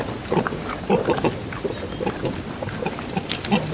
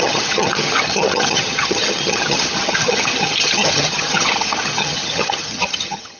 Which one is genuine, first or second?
first